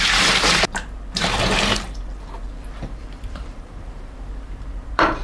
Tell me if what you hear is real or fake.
fake